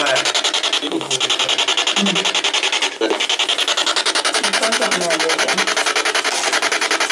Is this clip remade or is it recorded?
recorded